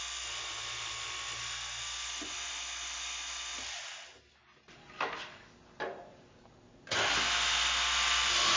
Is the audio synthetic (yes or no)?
no